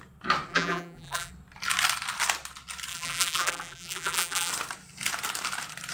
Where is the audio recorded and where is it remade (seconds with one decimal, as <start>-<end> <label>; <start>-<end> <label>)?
0.0-0.5 recorded; 0.5-1.3 remade; 1.3-2.9 recorded; 2.9-4.5 remade; 4.5-5.9 recorded